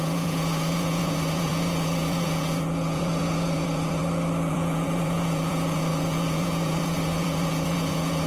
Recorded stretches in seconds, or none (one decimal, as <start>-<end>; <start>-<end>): 4.0-4.5

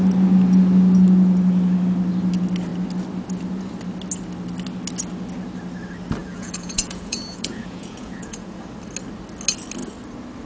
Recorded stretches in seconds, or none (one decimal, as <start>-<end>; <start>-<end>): 0.0-6.2; 8.6-10.5

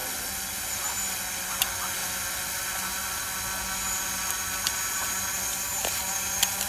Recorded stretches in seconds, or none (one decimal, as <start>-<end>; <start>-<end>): 0.0-6.7

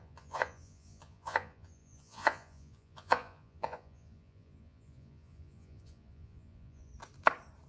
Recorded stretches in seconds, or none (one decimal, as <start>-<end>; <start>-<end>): 6.9-7.7

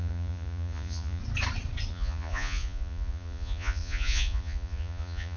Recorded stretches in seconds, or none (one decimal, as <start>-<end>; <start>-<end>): 1.2-1.9

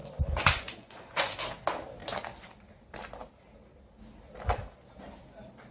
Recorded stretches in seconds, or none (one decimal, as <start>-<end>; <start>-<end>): 1.3-5.7

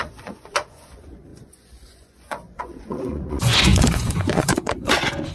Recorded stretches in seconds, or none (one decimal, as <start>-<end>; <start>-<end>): none

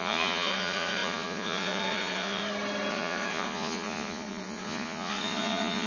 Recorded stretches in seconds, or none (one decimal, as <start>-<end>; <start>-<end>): 2.4-2.9